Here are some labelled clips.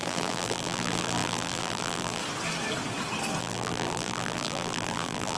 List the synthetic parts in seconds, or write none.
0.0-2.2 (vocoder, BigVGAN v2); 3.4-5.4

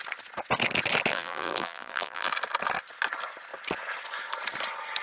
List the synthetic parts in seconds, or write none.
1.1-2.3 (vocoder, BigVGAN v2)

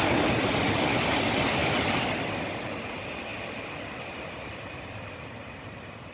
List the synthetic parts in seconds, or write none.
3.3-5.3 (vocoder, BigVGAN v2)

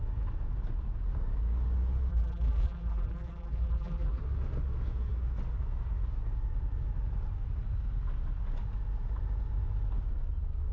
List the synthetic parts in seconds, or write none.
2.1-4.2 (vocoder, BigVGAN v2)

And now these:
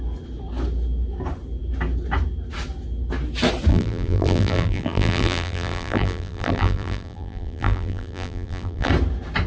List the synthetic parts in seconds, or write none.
3.7-8.9 (vocoder, BigVGAN v2)

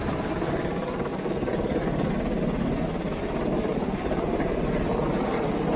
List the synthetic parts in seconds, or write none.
1.1-2.1 (vocoder, BigVGAN v2); 3.7-5.0

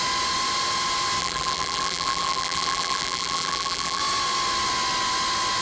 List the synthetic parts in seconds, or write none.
1.2-4.0 (vocoder, BigVGAN v2)